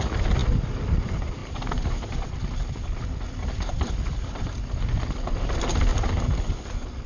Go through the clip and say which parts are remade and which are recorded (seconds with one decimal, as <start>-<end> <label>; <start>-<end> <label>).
0.0-0.4 remade; 0.4-0.9 recorded; 0.9-5.9 remade; 5.9-7.1 recorded